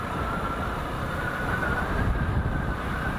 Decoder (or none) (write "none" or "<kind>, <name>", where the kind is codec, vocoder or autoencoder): none